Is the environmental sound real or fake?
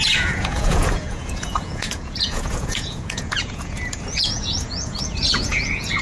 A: fake